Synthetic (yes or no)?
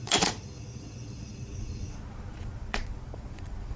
yes